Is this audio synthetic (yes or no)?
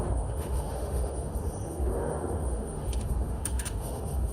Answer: yes